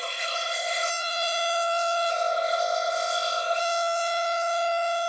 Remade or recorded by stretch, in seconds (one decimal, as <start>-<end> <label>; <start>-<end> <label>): 0.0-0.9 remade; 0.9-2.1 recorded; 2.1-3.6 remade; 3.6-5.1 recorded